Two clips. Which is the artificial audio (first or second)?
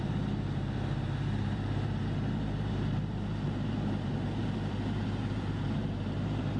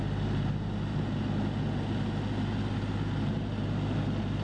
first